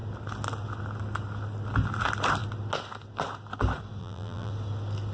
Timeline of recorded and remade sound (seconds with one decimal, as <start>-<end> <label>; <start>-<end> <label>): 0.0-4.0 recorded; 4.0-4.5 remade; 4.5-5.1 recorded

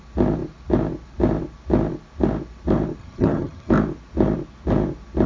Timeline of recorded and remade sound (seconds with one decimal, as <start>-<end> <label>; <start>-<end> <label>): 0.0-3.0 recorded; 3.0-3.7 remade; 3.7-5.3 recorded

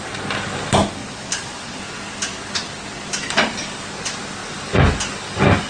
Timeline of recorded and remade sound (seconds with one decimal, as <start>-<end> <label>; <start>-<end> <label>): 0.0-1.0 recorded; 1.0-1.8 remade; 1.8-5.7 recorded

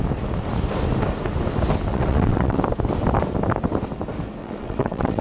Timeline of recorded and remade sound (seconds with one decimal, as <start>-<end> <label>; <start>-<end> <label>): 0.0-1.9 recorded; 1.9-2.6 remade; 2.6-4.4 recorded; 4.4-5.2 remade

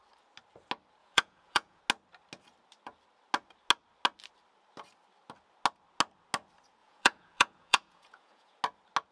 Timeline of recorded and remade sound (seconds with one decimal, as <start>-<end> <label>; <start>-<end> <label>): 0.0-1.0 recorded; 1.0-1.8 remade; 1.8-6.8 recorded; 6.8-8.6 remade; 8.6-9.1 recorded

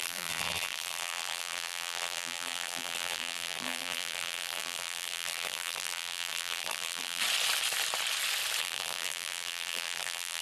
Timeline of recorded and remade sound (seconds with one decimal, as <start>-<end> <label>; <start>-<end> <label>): 0.0-7.2 remade; 7.2-8.6 recorded; 8.6-10.4 remade

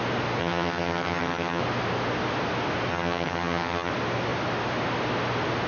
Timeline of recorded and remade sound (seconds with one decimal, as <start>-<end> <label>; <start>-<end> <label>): 0.0-0.4 recorded; 0.4-1.6 remade; 1.6-2.9 recorded; 2.9-3.9 remade; 3.9-5.7 recorded